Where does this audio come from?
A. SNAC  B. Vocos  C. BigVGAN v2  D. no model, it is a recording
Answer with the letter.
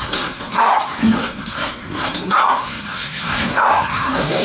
A